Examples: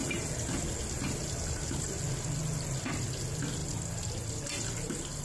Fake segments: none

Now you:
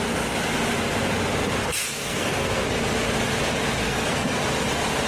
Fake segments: 1.6-2.7 (codec, SNAC); 3.8-4.4

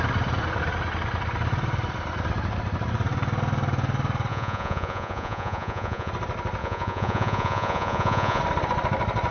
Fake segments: 4.3-6.1 (vocoder, Vocos); 6.6-8.4

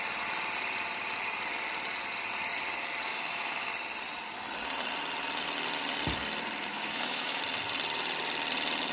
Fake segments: 3.1-3.7 (autoencoder, DAC-VAE); 6.7-7.4

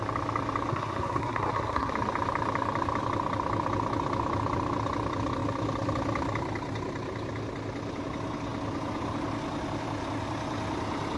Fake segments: 0.7-1.9 (codec, SNAC)